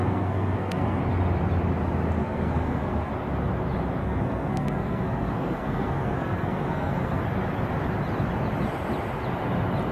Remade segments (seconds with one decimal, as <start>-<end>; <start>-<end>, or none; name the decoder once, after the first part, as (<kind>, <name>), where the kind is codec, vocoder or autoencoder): 0.0-1.0 (codec, SNAC); 2.2-3.1; 4.0-7.2